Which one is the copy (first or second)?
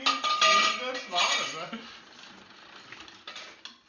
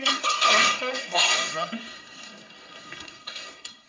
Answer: second